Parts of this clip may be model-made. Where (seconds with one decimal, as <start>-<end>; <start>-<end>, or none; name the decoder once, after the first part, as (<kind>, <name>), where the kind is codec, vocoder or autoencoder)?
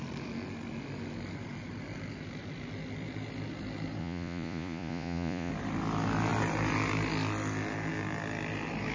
4.0-5.5 (vocoder, Vocos)